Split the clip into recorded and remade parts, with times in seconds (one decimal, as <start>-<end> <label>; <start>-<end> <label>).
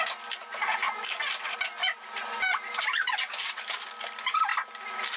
0.0-1.8 recorded; 1.8-3.9 remade; 3.9-5.2 recorded